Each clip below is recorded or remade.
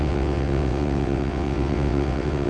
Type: remade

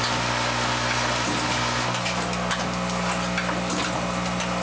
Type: recorded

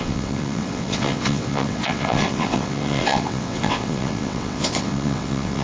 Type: remade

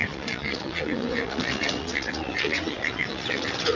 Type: remade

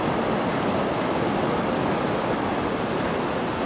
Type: recorded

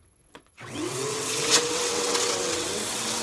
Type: remade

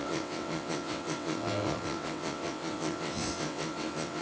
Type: remade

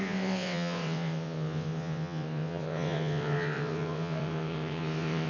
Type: remade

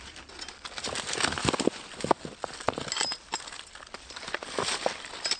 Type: recorded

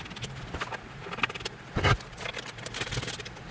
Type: recorded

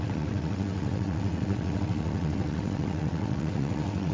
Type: remade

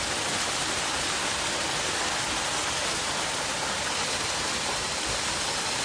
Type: recorded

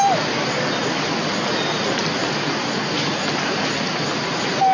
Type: recorded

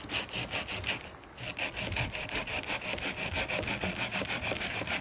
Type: recorded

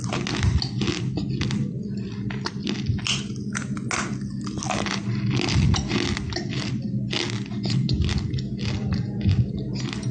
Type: recorded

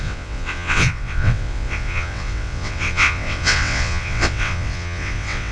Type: remade